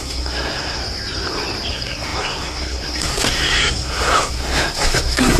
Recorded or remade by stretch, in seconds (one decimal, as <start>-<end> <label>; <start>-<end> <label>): 0.0-0.8 remade; 0.8-1.7 recorded; 1.7-5.4 remade

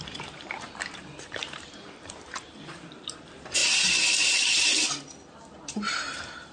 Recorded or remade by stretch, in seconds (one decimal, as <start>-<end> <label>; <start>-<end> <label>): 0.0-3.6 remade; 3.6-4.3 recorded; 4.3-4.7 remade; 4.7-5.7 recorded; 5.7-6.5 remade

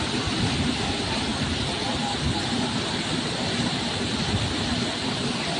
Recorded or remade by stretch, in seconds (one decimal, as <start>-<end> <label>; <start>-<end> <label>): 0.0-1.3 remade; 1.3-2.9 recorded; 2.9-5.6 remade

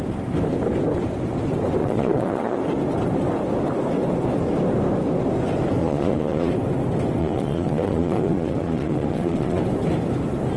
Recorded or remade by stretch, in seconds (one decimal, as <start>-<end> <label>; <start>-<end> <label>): 0.0-1.8 recorded; 1.8-2.6 remade; 2.6-5.8 recorded; 5.8-6.5 remade; 6.5-7.2 recorded; 7.2-9.6 remade; 9.6-10.6 recorded

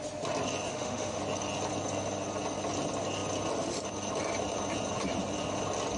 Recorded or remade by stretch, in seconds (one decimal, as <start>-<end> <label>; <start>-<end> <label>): 0.0-0.7 recorded; 0.7-1.2 remade; 1.2-6.0 recorded

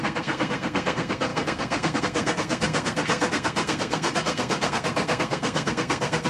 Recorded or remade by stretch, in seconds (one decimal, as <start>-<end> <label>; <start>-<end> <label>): 0.0-6.3 remade

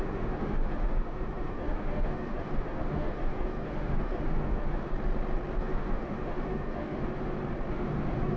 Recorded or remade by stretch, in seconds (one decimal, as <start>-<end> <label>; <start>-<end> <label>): 0.0-4.9 remade; 4.9-5.6 recorded; 5.6-7.0 remade; 7.0-7.7 recorded; 7.7-8.4 remade

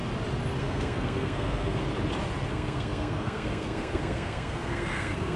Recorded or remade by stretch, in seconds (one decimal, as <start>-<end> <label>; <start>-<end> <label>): 0.0-0.6 recorded; 0.6-1.8 remade; 1.8-2.5 recorded; 2.5-5.4 remade